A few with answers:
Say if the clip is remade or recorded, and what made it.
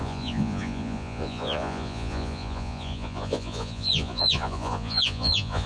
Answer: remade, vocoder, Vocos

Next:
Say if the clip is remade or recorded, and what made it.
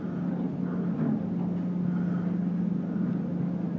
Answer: recorded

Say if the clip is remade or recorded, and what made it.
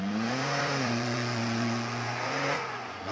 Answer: remade, vocoder, Vocos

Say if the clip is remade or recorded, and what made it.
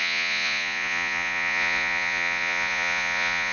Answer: remade, vocoder, Vocos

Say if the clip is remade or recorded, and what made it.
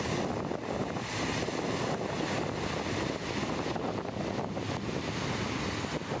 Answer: recorded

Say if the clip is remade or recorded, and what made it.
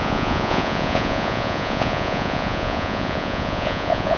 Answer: remade, vocoder, Vocos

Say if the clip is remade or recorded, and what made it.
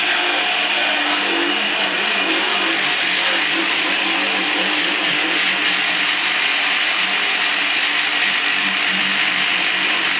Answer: recorded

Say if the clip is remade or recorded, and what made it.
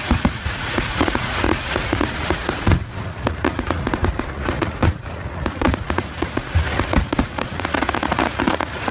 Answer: remade, vocoder, Vocos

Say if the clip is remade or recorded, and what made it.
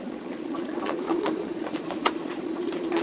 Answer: remade, vocoder, Vocos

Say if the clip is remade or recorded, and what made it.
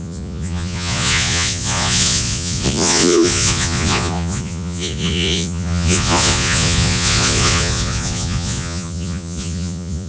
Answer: remade, vocoder, Vocos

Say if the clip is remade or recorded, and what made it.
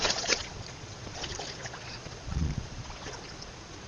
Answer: remade, vocoder, Vocos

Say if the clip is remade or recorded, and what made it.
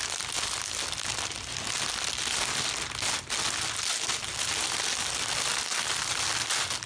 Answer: recorded